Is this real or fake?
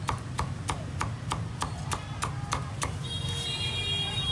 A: real